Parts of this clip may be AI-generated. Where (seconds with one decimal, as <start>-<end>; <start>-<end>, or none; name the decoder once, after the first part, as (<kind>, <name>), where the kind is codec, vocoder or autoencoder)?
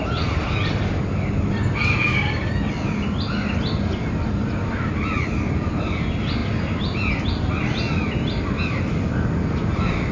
none